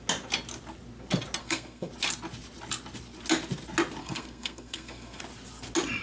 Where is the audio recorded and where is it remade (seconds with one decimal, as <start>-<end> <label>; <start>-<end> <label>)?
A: 0.0-1.4 recorded; 1.4-1.9 remade; 1.9-4.0 recorded; 4.0-5.2 remade; 5.2-6.0 recorded